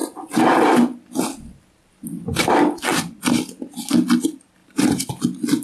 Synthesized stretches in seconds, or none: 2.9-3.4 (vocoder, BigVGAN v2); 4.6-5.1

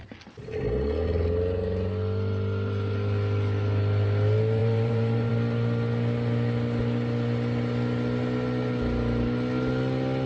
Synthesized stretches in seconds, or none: 4.6-5.3 (vocoder, BigVGAN v2)

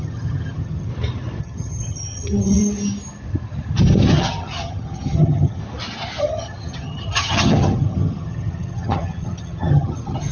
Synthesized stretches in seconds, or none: 0.0-0.9 (vocoder, HiFi-GAN); 1.4-2.6; 4.1-5.6; 6.2-10.3

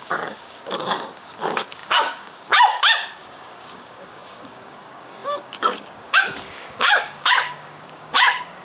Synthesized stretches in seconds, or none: 0.0-8.6 (codec, DAC)

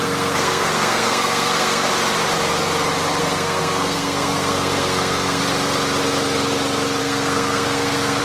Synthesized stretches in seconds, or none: 0.0-1.9 (codec, SNAC); 3.2-5.4; 7.0-8.2

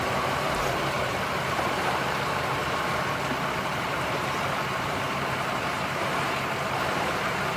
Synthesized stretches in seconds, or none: 0.0-2.6 (vocoder, BigVGAN v2); 3.5-7.6

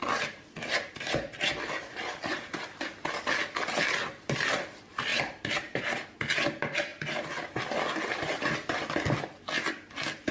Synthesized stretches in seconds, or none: 5.1-5.8 (vocoder, BigVGAN v2)

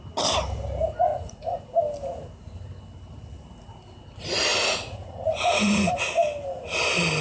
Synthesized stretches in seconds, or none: 1.1-1.6 (vocoder, Vocos); 4.5-6.0